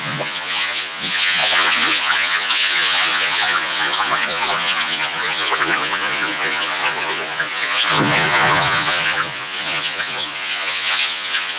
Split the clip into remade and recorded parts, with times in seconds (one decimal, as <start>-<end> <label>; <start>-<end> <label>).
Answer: 0.0-11.6 remade